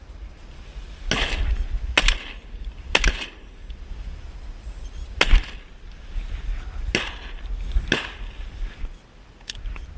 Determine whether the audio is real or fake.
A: real